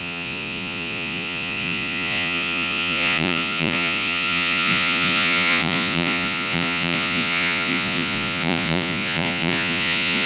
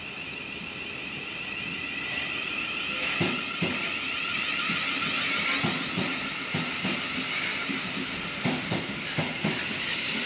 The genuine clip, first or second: second